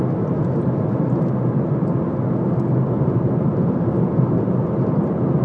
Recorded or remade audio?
recorded